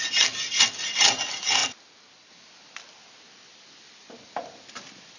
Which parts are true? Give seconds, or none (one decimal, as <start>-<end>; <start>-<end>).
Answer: 0.0-5.2